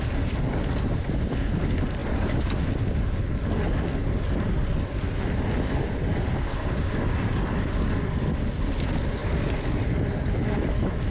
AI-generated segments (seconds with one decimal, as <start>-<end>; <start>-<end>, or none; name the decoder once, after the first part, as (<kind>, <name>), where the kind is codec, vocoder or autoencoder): 2.0-2.5 (vocoder, BigVGAN v2); 4.0-7.7